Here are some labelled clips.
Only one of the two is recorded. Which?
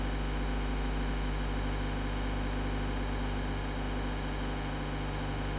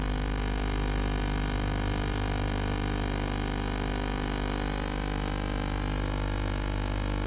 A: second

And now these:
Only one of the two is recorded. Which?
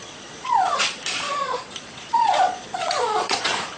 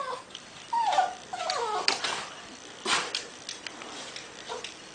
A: second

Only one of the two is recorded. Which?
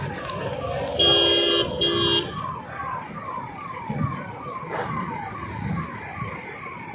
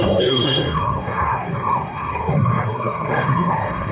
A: first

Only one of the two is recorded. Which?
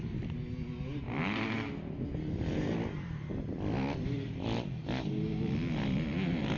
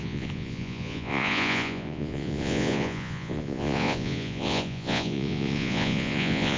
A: first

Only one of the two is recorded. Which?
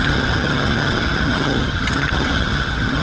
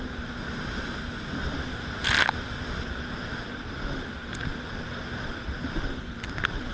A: second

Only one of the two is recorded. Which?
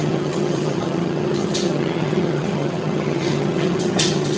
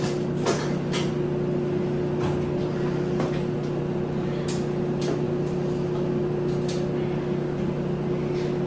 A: second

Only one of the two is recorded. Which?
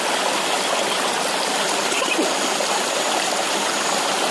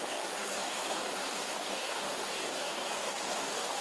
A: first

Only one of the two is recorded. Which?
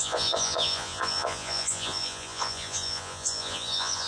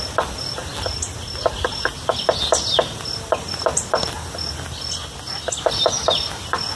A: second